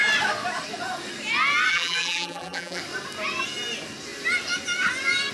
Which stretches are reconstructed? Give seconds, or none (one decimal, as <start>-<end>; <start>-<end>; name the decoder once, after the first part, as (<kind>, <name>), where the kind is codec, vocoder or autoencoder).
1.7-2.8 (vocoder, BigVGAN v2)

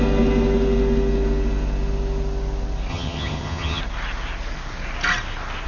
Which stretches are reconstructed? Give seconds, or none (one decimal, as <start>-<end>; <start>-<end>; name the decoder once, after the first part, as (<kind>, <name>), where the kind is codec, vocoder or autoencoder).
2.9-3.8 (vocoder, HiFi-GAN)

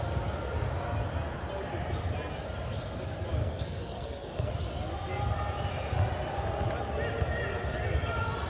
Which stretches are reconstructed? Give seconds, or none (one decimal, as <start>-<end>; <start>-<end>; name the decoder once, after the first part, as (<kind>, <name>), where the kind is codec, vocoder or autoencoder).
3.4-4.5 (codec, SNAC)